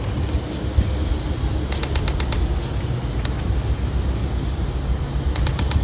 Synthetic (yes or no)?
no